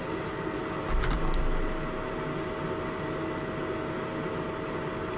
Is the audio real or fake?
real